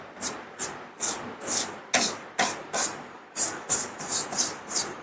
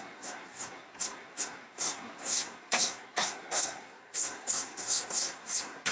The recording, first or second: first